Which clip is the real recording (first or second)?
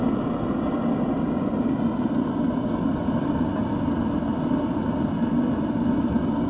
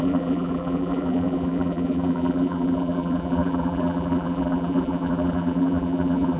first